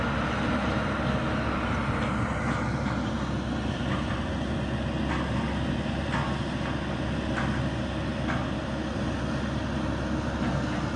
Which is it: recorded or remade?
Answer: recorded